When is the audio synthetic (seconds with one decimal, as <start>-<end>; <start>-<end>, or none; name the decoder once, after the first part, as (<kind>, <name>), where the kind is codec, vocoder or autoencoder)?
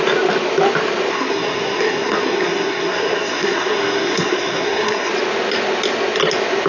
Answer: 1.1-5.1 (codec, SNAC)